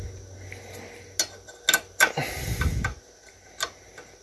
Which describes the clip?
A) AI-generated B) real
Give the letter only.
B